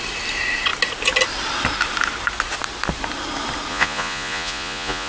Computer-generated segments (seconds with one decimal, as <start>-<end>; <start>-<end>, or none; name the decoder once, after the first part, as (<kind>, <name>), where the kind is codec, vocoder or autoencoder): 3.7-5.1 (vocoder, Vocos)

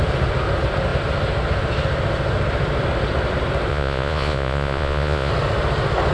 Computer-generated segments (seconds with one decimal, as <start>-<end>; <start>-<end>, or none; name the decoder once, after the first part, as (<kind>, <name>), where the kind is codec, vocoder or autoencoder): 3.7-5.3 (vocoder, Vocos)

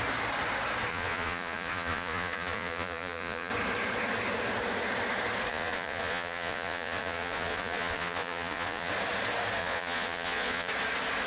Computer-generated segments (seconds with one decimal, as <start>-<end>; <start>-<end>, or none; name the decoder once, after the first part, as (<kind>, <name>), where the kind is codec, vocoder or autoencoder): 0.9-3.5 (vocoder, Vocos); 5.5-8.9; 9.6-10.7

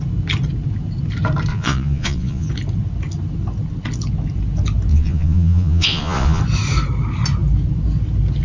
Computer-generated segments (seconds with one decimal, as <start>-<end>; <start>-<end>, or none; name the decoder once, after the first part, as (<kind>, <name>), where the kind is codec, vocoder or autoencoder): 1.5-2.5 (vocoder, Vocos); 4.9-6.4

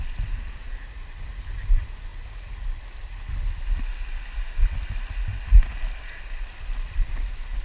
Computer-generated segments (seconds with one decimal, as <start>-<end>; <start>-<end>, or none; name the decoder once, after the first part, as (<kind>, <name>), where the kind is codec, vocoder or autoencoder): none

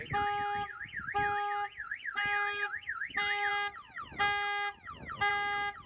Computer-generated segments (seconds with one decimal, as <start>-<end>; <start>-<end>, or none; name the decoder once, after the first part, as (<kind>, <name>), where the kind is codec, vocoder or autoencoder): none